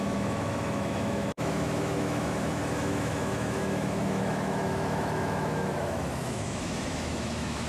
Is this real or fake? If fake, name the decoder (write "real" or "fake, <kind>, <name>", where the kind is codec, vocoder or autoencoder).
fake, autoencoder, DAC-VAE